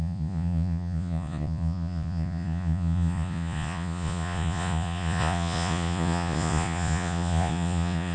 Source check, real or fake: fake